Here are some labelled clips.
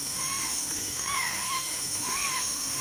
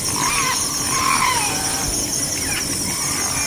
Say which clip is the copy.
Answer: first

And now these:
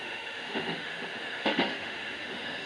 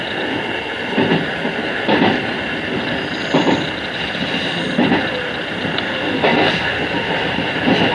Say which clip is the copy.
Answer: first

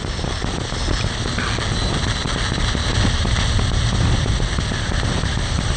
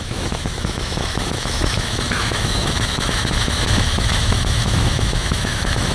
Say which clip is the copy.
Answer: second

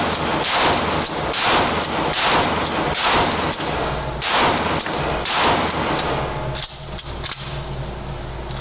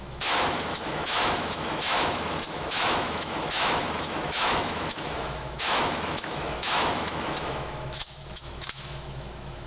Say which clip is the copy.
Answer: second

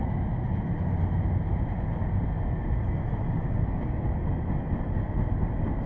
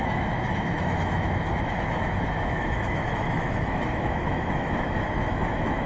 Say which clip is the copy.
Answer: second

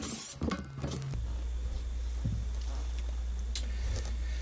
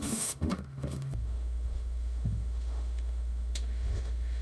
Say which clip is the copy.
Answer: second